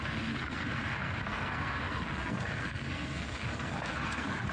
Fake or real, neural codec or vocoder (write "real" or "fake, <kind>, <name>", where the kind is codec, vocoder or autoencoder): fake, codec, SNAC